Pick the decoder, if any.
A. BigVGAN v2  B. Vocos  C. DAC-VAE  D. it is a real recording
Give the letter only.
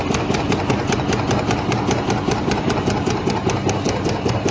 D